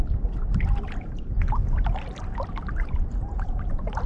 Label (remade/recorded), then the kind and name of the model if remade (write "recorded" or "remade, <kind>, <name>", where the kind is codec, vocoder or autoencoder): recorded